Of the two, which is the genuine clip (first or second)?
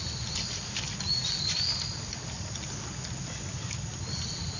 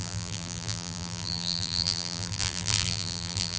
first